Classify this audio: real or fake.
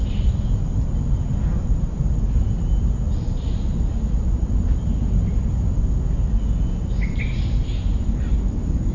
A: real